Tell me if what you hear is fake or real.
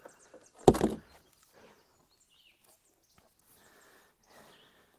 real